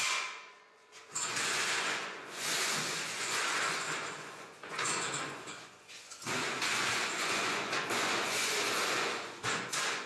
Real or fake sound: fake